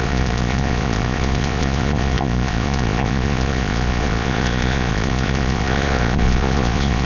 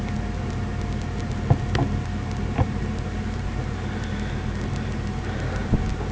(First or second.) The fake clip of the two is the first